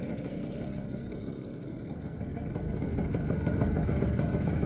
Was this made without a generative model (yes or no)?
no